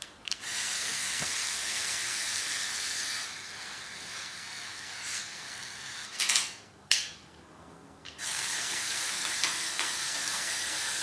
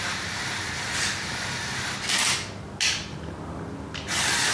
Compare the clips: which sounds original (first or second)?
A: second